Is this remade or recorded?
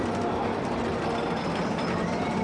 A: recorded